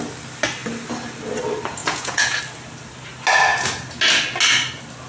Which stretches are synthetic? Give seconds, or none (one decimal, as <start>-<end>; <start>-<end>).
1.8-2.4